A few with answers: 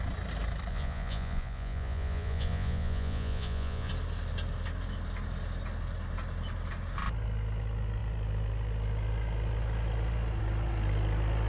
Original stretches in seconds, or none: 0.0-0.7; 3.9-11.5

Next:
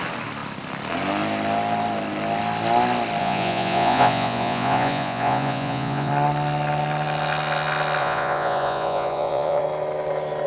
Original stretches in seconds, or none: 0.0-3.2; 6.1-8.0; 9.6-10.5